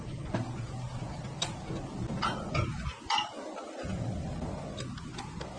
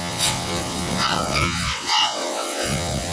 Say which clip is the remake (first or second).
second